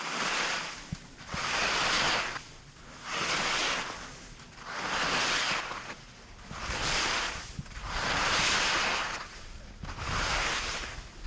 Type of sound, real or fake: real